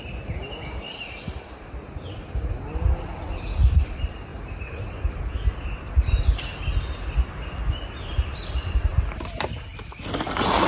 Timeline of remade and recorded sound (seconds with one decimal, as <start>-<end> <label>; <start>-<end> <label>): 0.0-4.3 recorded; 4.3-4.9 remade; 4.9-8.9 recorded; 8.9-9.6 remade; 9.6-10.7 recorded